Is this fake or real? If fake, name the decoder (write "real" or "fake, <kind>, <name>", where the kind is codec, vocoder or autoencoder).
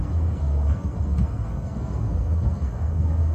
fake, codec, SNAC